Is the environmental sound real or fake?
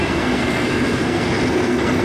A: fake